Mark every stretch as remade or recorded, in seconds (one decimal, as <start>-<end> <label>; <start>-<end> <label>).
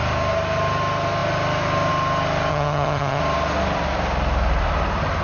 0.0-2.5 recorded; 2.5-3.2 remade; 3.2-5.2 recorded